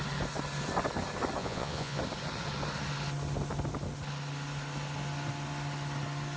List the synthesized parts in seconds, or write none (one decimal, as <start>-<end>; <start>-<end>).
1.4-2.0